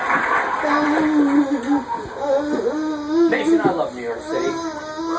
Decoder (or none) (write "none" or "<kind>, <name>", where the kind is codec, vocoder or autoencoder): none